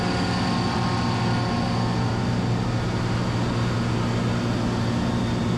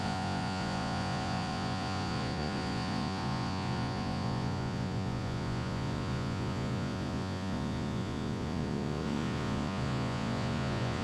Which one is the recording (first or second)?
first